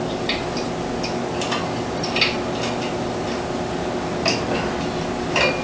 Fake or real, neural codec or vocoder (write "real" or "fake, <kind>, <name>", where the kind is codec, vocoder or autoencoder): real